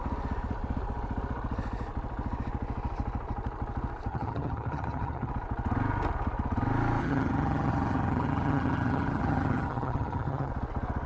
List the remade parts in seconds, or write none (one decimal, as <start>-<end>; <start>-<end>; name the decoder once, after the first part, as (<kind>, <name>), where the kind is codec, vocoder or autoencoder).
4.1-5.3 (vocoder, HiFi-GAN); 7.0-10.5